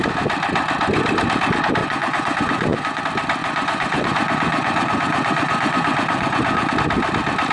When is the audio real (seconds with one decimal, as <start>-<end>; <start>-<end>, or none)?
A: 0.0-1.8; 3.0-3.4; 6.7-7.5